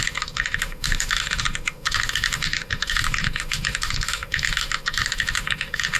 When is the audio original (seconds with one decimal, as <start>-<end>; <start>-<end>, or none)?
none